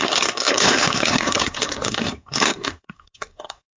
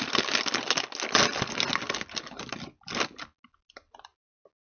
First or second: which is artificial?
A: first